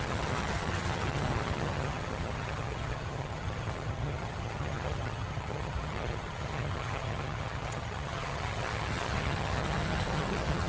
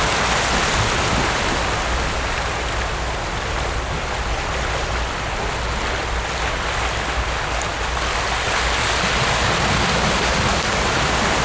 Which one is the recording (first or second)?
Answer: second